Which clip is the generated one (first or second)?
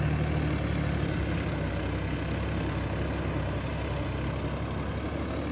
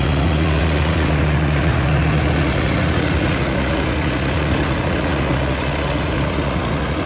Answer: second